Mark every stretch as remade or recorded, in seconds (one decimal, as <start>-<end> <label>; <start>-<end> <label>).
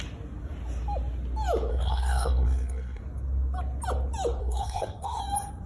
0.0-1.7 recorded; 1.7-3.0 remade; 3.0-4.4 recorded; 4.4-5.2 remade; 5.2-5.7 recorded